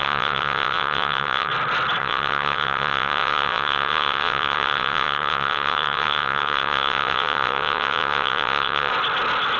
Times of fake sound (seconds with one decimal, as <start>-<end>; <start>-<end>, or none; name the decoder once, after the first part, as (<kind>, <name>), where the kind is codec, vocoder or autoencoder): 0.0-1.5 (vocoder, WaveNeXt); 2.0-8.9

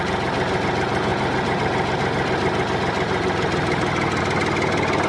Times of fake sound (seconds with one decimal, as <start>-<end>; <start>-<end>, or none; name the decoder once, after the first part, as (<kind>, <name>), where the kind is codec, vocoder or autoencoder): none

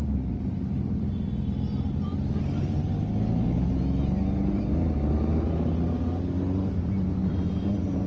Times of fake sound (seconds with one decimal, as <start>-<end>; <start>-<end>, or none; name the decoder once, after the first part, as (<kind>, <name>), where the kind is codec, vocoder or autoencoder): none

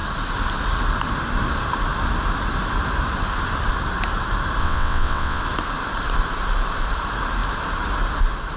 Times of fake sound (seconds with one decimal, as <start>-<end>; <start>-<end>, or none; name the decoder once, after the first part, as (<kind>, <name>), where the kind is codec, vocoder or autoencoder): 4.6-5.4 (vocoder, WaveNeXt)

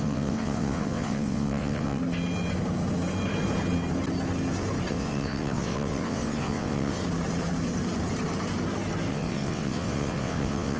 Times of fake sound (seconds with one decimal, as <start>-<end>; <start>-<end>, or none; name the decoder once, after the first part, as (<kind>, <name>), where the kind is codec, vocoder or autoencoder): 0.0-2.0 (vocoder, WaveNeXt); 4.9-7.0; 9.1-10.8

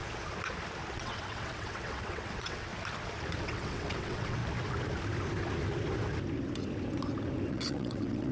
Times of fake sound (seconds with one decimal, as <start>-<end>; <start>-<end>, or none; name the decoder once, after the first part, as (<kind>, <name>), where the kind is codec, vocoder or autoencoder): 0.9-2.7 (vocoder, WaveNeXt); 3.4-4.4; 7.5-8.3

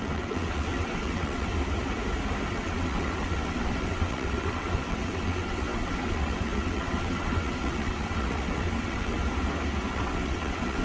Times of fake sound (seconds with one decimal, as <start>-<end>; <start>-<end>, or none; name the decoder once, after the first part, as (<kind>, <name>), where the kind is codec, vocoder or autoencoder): 0.0-1.5 (vocoder, WaveNeXt); 2.5-9.2; 9.9-10.8